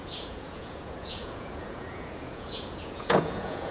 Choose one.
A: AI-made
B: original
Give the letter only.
A